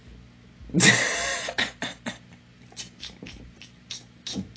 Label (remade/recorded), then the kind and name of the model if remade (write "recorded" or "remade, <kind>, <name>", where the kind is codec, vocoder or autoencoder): recorded